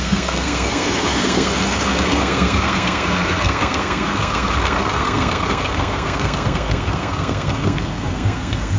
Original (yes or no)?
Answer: no